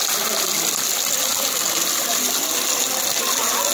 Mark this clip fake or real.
real